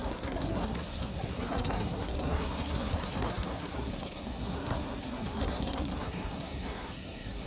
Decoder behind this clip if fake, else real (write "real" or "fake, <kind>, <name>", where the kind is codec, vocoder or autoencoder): fake, codec, SNAC